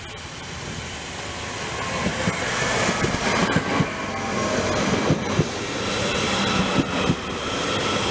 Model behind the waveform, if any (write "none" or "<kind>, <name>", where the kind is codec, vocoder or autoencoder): none